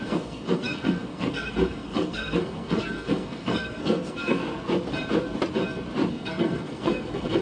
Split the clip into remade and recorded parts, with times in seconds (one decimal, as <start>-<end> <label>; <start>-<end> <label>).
0.0-4.4 remade; 4.4-6.1 recorded; 6.1-7.4 remade